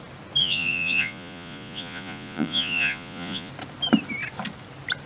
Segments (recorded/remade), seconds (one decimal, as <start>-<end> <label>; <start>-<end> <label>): 0.0-0.4 recorded; 0.4-3.5 remade; 3.5-5.1 recorded